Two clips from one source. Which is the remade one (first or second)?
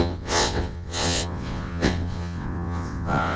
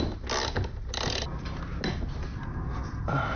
first